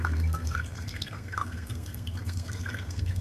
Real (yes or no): no